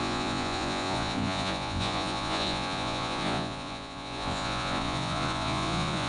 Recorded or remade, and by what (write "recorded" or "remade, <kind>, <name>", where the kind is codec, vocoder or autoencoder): remade, vocoder, Vocos